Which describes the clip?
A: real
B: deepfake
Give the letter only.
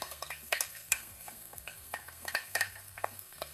B